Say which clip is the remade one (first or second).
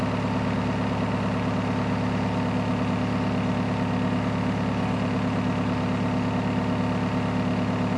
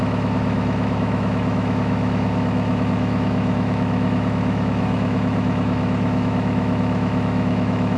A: second